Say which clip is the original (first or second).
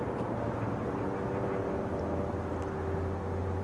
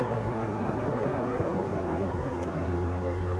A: first